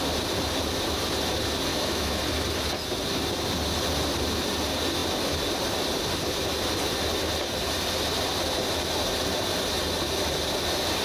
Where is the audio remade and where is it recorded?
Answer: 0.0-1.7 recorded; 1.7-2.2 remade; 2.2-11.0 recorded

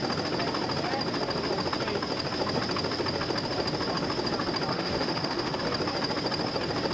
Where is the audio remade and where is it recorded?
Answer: 0.0-4.7 recorded; 4.7-5.6 remade; 5.6-6.9 recorded

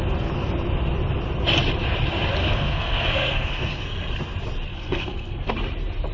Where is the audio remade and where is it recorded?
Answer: 0.0-2.4 recorded; 2.4-4.1 remade; 4.1-4.7 recorded; 4.7-5.5 remade; 5.5-6.1 recorded

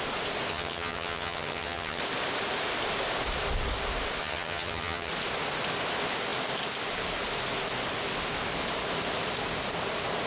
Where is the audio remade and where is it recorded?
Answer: 0.0-0.5 recorded; 0.5-2.0 remade; 2.0-4.2 recorded; 4.2-5.1 remade; 5.1-10.3 recorded